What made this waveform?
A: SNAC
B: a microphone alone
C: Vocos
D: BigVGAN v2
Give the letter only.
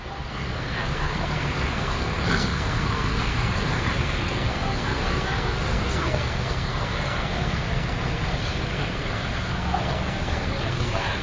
A